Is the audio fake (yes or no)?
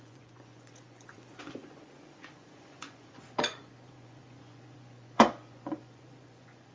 yes